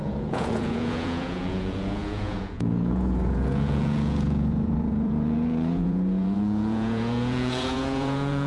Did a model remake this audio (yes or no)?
yes